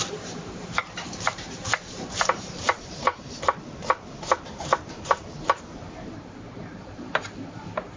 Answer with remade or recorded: remade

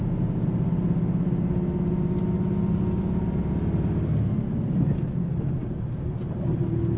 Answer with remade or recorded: recorded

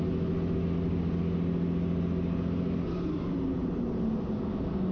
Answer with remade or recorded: recorded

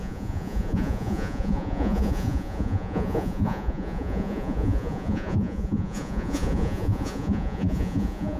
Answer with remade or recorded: remade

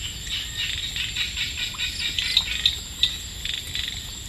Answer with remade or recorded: recorded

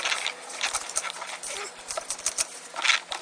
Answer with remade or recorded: recorded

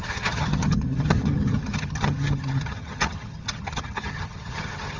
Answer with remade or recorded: remade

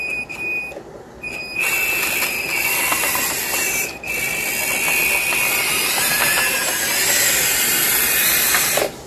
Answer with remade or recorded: remade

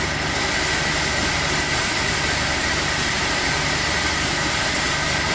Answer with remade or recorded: recorded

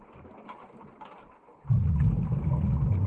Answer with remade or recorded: recorded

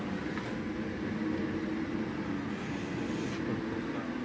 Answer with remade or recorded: recorded